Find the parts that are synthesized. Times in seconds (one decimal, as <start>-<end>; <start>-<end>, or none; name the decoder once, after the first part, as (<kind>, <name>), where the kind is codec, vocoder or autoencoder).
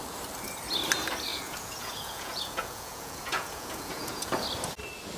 1.3-4.4 (vocoder, Vocos)